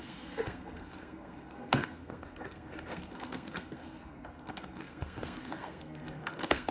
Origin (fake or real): fake